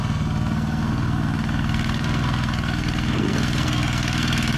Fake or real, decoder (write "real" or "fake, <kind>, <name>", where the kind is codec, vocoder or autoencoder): fake, codec, SNAC